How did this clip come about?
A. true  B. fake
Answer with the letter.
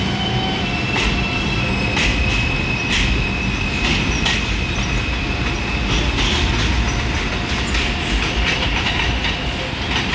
A